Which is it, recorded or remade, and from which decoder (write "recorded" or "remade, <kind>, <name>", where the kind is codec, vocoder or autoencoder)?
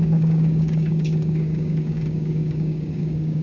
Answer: remade, codec, DAC